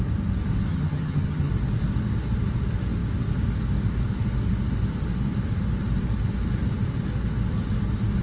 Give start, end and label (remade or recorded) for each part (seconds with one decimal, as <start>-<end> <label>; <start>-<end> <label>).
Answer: 0.0-0.7 recorded; 0.7-1.5 remade; 1.5-8.2 recorded